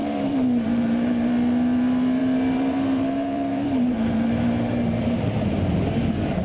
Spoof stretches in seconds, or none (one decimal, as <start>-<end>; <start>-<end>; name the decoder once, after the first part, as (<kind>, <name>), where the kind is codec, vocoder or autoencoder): 0.0-1.3 (vocoder, BigVGAN v2); 2.2-5.5